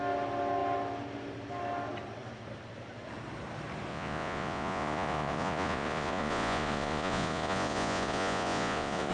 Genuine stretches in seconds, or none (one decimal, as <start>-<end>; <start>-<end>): 0.0-3.9